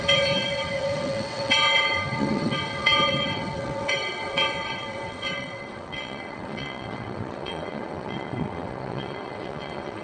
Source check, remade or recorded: remade